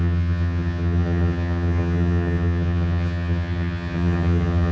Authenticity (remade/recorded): remade